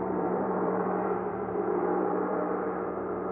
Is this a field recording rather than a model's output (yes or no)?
no